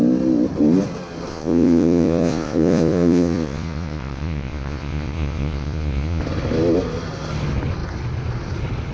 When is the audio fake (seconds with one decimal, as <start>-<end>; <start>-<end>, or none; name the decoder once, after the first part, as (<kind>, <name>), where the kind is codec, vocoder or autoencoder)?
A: 1.3-6.2 (vocoder, Vocos)